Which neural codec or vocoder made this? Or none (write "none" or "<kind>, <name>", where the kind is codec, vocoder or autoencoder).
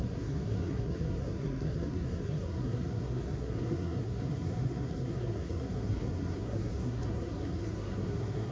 codec, SNAC